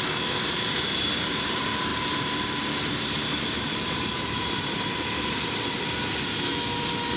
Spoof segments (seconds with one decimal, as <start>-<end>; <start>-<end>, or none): 1.9-5.4